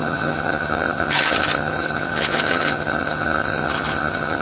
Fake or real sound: fake